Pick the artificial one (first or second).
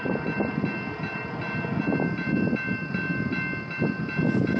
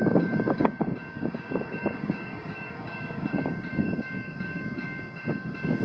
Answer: second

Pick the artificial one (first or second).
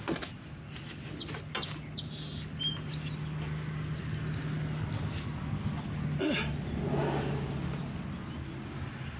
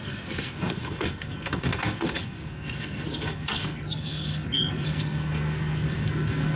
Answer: second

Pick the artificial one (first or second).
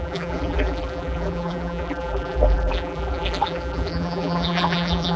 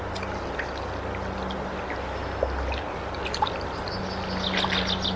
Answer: first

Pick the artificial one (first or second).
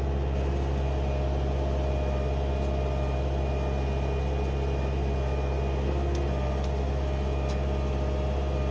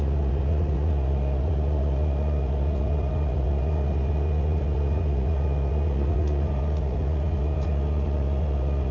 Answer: second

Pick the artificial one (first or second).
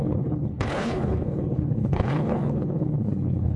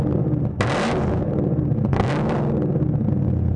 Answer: first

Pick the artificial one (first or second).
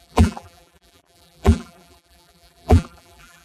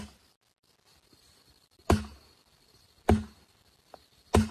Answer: first